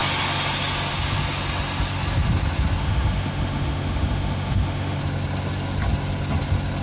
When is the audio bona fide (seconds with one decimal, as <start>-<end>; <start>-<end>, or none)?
0.0-2.8; 5.0-6.8